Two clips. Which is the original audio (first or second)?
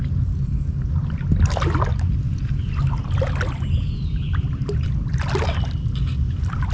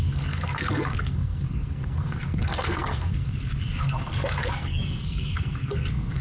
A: first